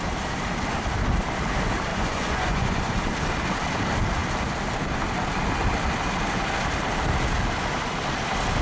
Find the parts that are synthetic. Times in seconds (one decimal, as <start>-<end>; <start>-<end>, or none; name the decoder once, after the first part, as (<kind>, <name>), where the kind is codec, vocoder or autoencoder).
1.9-2.9 (vocoder, Vocos)